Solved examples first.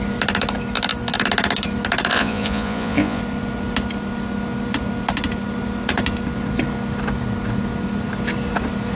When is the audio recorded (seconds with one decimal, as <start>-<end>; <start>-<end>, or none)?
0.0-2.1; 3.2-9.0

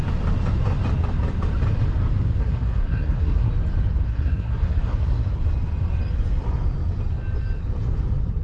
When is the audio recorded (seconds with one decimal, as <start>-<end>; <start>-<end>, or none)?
0.0-2.4; 3.5-4.1; 5.3-8.4

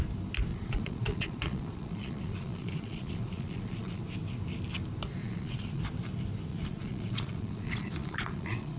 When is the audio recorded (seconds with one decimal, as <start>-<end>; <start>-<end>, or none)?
0.0-0.5; 4.0-5.2; 5.8-6.5

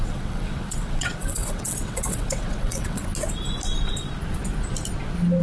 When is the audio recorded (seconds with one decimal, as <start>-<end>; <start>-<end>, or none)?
3.0-5.4

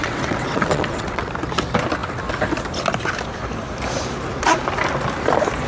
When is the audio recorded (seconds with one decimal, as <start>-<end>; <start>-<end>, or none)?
1.3-5.7